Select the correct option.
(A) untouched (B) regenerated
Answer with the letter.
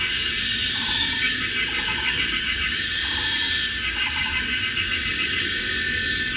B